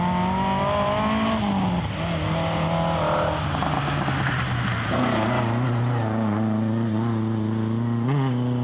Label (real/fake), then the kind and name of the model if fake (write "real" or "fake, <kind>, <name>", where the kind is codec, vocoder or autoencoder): real